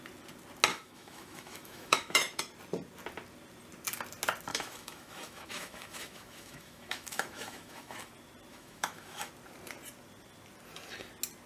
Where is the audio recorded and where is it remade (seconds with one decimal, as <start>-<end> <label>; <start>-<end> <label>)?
0.0-0.7 recorded; 0.7-2.4 remade; 2.4-4.5 recorded; 4.5-8.1 remade; 8.1-8.5 recorded; 8.5-9.3 remade; 9.3-11.5 recorded